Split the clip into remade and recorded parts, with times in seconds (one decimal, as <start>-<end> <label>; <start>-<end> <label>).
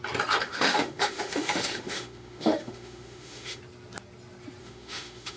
0.0-0.4 recorded; 0.4-3.6 remade; 3.6-4.6 recorded; 4.6-5.4 remade